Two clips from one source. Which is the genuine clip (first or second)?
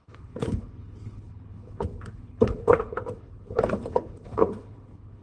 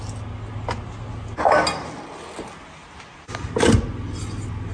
second